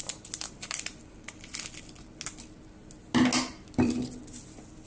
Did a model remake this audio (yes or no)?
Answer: no